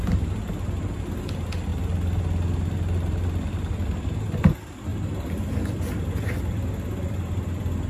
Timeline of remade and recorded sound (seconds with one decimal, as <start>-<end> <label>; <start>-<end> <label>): 0.0-4.9 recorded; 4.9-5.5 remade; 5.5-7.9 recorded